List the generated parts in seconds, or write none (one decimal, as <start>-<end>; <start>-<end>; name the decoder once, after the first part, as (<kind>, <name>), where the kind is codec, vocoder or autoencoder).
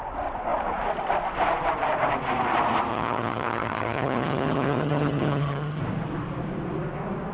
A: 2.9-5.8 (vocoder, HiFi-GAN)